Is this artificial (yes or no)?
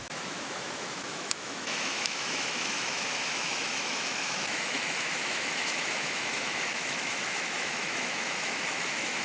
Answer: yes